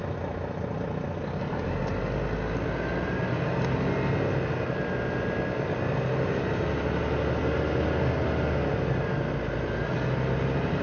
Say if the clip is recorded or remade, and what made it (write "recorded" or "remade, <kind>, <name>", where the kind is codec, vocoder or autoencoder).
recorded